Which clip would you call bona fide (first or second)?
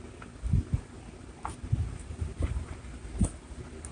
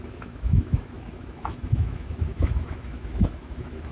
first